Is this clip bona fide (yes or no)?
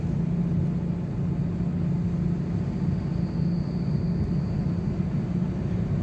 yes